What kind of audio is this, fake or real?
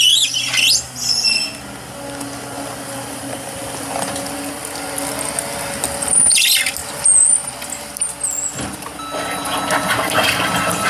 real